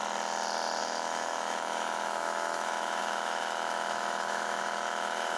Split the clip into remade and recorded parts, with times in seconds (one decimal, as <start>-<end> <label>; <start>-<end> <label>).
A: 0.0-0.8 recorded; 0.8-5.4 remade